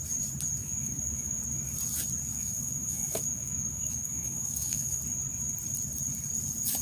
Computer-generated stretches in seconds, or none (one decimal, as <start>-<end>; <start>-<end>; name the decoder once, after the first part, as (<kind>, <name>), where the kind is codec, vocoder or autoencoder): 0.6-1.4 (autoencoder, DAC-VAE); 2.3-5.0